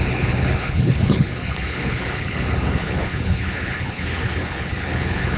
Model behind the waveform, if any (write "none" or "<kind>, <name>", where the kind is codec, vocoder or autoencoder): codec, HILCodec